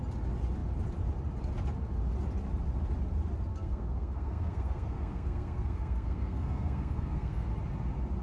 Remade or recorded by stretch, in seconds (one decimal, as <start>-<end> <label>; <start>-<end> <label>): 0.0-3.5 recorded; 3.5-7.5 remade; 7.5-8.2 recorded